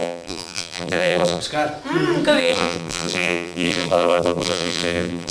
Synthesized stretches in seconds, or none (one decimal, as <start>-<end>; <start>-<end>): 0.0-1.4; 2.4-5.3